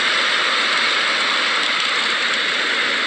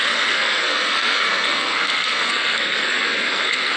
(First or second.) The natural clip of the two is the first